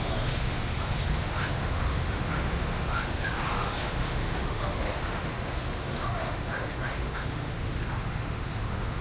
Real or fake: fake